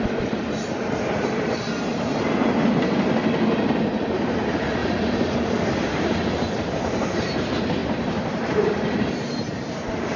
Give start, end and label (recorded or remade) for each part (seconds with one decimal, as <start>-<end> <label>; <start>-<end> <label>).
0.0-0.6 remade; 0.6-4.0 recorded; 4.0-10.2 remade